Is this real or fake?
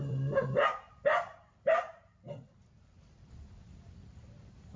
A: fake